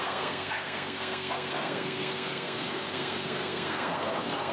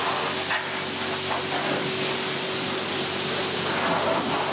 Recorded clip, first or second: second